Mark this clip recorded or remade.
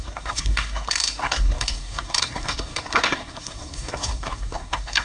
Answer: remade